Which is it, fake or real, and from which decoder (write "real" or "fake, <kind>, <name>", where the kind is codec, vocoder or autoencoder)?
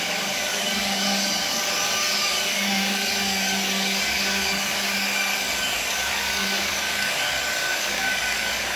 fake, codec, DAC